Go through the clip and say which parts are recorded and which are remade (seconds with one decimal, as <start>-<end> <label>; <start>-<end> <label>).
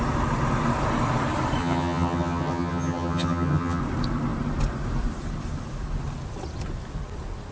0.0-1.6 recorded; 1.6-3.8 remade; 3.8-7.5 recorded